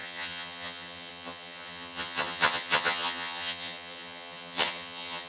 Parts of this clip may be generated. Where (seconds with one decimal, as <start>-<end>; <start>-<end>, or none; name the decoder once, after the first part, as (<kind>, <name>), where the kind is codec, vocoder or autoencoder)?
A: 0.0-5.3 (vocoder, HiFi-GAN)